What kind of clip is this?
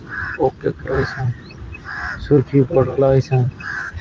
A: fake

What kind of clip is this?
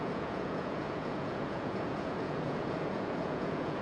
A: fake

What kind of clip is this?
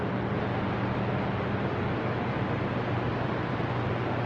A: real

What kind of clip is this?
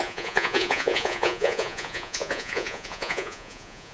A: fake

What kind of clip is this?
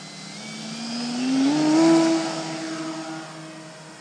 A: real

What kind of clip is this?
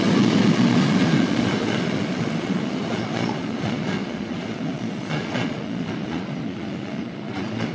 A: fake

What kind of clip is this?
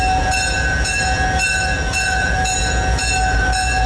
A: fake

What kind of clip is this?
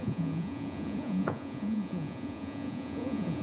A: fake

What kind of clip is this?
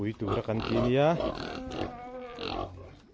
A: real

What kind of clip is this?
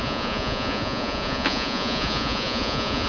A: fake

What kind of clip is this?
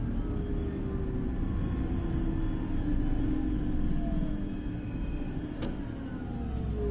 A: real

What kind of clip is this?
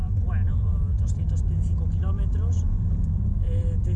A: real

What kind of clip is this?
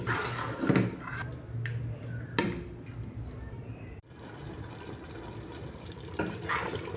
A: real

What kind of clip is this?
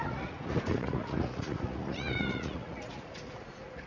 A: fake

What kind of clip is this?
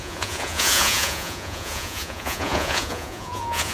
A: fake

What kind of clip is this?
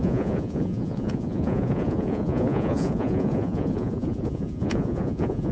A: fake